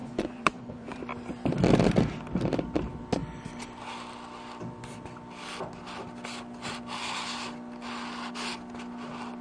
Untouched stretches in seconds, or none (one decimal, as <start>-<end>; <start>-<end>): 1.0-9.4